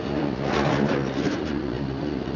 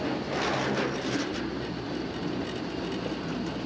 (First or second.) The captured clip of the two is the second